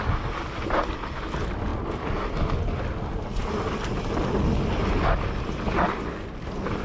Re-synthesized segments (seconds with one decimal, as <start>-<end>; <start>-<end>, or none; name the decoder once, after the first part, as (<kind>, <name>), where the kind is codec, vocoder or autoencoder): none